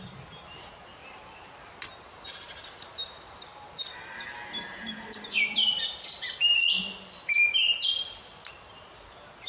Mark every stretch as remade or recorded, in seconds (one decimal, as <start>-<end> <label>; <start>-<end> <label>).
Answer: 0.0-1.0 remade; 1.0-2.1 recorded; 2.1-3.5 remade; 3.5-4.5 recorded; 4.5-6.6 remade; 6.6-8.2 recorded; 8.2-9.5 remade